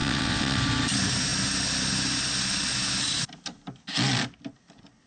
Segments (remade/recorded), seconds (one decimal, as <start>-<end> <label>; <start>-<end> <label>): 0.0-0.6 remade; 0.6-5.1 recorded